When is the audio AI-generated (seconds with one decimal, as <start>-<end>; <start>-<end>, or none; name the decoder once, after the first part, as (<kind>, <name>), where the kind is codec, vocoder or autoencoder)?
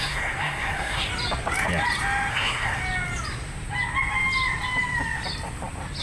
0.0-1.1 (codec, SNAC); 2.3-2.8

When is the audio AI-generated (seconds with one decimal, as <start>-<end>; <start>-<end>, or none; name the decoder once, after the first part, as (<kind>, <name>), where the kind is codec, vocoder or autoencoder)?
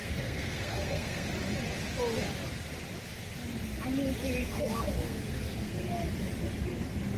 0.0-1.3 (codec, SNAC); 4.4-5.9